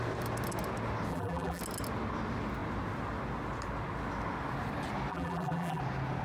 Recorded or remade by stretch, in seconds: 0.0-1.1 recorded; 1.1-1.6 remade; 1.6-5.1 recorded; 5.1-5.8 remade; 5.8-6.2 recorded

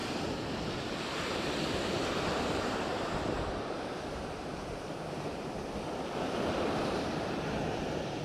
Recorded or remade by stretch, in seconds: 0.0-0.7 recorded; 0.7-8.2 remade